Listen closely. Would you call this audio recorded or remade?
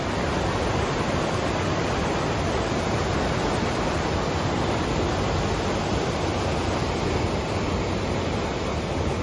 recorded